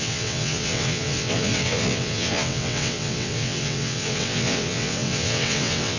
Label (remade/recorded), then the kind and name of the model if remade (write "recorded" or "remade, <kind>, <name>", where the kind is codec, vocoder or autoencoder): remade, vocoder, WaveNeXt